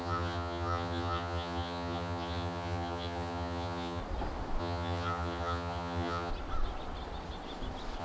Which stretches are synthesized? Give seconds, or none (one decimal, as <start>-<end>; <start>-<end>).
0.0-4.0; 4.6-6.3

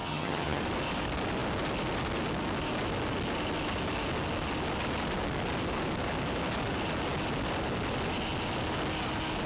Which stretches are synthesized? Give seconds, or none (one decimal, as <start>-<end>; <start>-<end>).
0.0-0.6